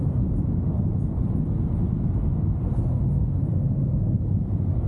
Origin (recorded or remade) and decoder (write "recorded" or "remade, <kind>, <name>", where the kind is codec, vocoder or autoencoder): recorded